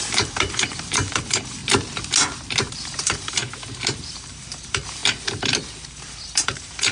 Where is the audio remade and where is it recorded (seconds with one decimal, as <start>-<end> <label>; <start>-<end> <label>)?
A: 0.0-1.6 remade; 1.6-2.7 recorded; 2.7-3.4 remade; 3.4-4.0 recorded; 4.0-5.0 remade; 5.0-5.9 recorded; 5.9-6.9 remade